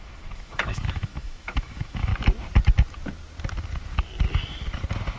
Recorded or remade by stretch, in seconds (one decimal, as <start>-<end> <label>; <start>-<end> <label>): 0.0-2.1 remade; 2.1-5.2 recorded